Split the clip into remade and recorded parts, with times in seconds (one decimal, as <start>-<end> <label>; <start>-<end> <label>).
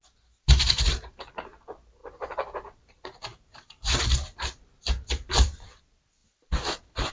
0.0-2.0 recorded; 2.0-5.8 remade; 5.8-6.2 recorded; 6.2-7.1 remade